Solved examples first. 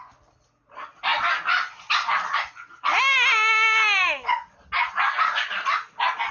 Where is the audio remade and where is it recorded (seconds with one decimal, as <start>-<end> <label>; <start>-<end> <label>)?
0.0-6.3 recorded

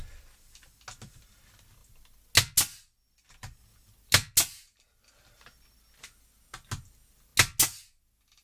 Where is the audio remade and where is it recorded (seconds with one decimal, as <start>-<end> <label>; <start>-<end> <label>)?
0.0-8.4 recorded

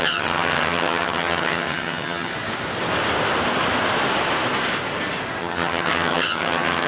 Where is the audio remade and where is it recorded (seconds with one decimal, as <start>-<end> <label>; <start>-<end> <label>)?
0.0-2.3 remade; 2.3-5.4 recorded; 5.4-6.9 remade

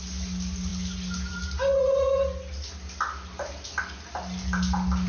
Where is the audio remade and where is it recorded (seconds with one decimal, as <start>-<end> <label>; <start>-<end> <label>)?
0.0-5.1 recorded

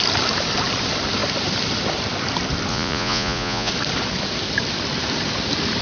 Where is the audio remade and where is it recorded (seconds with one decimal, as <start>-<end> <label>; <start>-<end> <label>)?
0.0-2.7 recorded; 2.7-3.7 remade; 3.7-5.8 recorded

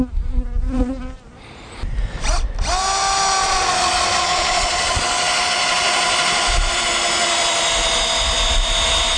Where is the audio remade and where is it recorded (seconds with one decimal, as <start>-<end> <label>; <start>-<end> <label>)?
0.0-3.4 recorded; 3.4-5.0 remade; 5.0-9.2 recorded

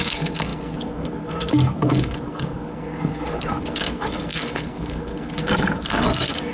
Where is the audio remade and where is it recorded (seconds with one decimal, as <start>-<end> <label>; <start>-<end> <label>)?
0.0-6.5 remade